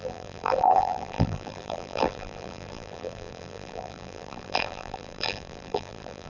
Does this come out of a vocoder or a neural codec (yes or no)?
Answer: yes